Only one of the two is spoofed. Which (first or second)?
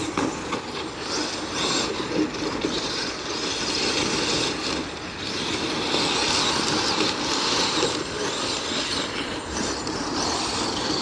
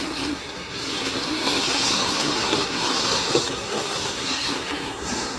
second